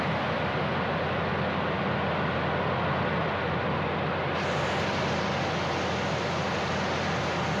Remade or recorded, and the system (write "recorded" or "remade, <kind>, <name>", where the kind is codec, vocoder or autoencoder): recorded